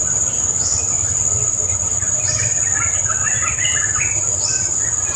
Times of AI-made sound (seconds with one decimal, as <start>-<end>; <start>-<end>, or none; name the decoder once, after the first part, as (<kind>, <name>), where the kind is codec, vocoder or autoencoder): none